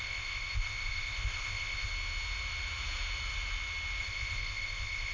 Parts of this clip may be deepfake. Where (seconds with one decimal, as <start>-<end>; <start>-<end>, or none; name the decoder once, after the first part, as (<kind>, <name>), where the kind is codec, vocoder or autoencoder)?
0.0-1.9 (codec, ZipCodec); 4.0-5.1